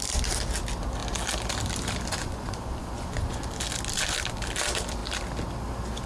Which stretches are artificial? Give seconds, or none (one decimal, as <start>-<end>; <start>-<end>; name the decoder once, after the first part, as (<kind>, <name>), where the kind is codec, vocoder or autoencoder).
2.2-3.4 (vocoder, Vocos)